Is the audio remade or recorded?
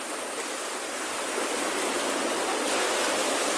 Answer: recorded